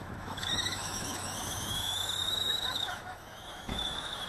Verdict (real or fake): fake